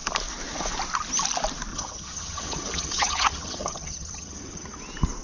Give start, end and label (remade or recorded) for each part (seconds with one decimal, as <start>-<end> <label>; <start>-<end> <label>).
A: 0.0-1.7 recorded; 1.7-4.8 remade; 4.8-5.2 recorded